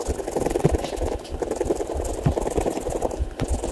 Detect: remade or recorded recorded